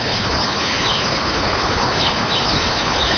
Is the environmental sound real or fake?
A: fake